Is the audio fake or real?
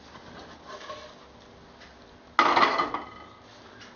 real